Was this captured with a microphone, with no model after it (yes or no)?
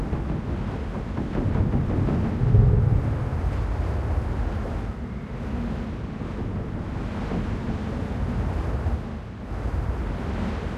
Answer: yes